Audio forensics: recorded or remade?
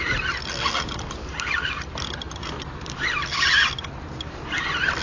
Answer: recorded